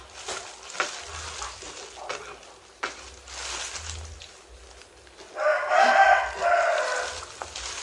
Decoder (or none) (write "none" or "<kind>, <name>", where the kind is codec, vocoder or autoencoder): none